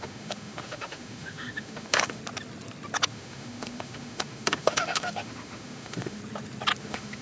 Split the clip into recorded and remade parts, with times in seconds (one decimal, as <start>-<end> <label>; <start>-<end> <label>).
0.0-2.2 remade; 2.2-3.1 recorded; 3.1-6.2 remade; 6.2-6.8 recorded; 6.8-7.2 remade